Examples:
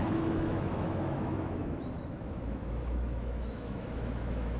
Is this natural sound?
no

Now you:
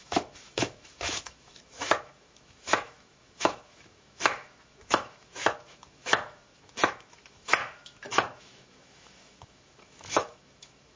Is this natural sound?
no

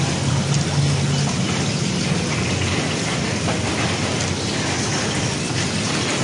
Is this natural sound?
yes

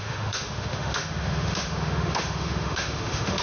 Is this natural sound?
no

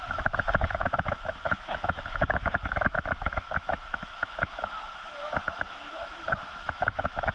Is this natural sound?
no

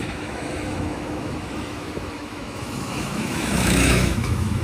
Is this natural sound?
no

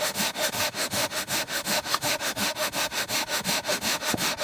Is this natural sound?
no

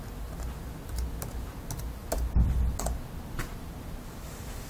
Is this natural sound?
yes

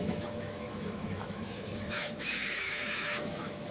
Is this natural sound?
no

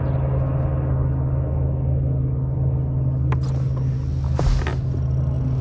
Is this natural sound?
yes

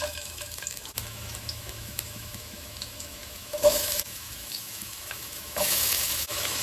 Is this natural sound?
no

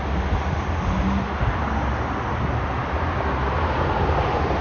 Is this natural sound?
yes